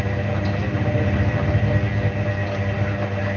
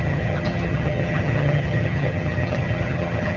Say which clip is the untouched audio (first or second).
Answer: first